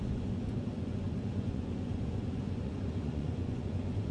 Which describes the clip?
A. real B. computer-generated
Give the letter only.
B